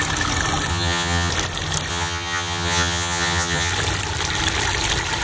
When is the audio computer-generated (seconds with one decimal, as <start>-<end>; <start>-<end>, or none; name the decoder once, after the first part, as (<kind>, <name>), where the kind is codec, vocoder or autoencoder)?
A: 0.7-1.3 (vocoder, HiFi-GAN); 1.9-3.7